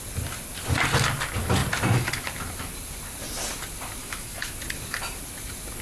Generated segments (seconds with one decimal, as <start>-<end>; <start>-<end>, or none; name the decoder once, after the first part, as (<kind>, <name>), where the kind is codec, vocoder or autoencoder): 4.0-4.5 (autoencoder, DAC-VAE)